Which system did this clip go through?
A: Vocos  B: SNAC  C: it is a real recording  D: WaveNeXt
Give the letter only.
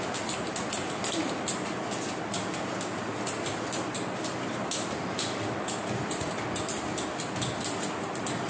C